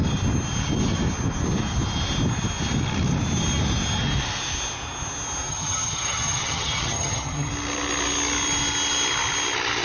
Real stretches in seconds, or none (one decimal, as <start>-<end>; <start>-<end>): 0.0-5.5; 7.5-9.8